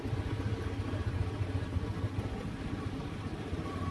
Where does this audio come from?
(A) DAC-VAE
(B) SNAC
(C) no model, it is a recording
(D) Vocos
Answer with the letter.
C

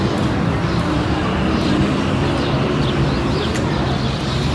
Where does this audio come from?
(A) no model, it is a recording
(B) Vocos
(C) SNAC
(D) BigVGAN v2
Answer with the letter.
A